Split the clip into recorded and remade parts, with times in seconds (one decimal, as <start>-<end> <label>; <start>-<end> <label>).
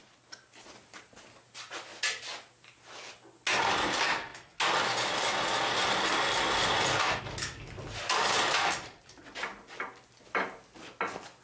0.0-11.4 recorded